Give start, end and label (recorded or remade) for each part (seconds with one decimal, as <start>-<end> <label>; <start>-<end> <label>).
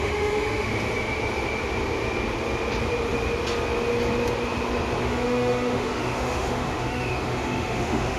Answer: 0.0-0.7 remade; 0.7-5.0 recorded; 5.0-8.2 remade